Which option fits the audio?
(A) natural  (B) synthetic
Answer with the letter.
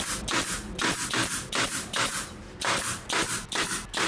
A